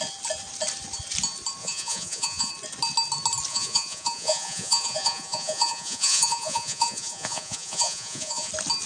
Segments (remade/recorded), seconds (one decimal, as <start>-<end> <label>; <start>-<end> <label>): 0.0-1.6 recorded; 1.6-2.5 remade; 2.5-3.5 recorded; 3.5-8.5 remade; 8.5-8.9 recorded